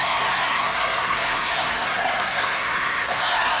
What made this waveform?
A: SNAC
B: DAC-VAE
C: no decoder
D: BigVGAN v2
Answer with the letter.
A